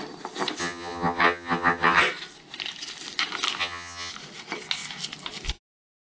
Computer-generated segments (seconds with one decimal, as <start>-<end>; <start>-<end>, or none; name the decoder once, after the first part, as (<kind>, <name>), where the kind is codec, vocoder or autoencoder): 0.6-2.0 (vocoder, HiFi-GAN); 3.6-4.1